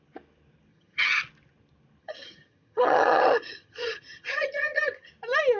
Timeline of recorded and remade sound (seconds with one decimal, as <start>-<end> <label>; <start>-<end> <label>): 0.0-0.7 recorded; 0.7-1.2 remade; 1.2-2.0 recorded; 2.0-5.1 remade; 5.1-5.6 recorded